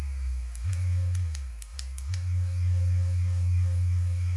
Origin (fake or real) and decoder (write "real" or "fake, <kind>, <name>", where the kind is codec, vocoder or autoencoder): fake, codec, DAC